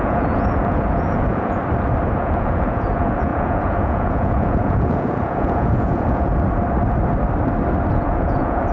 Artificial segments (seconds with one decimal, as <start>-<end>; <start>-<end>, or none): 0.0-1.6; 2.2-6.3; 7.9-8.7